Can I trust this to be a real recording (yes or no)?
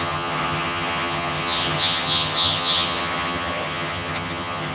no